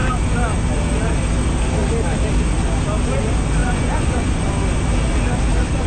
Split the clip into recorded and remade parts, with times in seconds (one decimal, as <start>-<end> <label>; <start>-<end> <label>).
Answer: 0.0-3.6 recorded; 3.6-4.5 remade; 4.5-5.9 recorded